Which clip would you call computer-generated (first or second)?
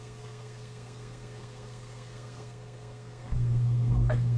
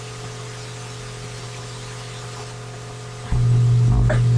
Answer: first